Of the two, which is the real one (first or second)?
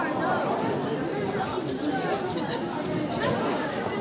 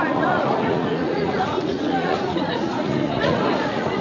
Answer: first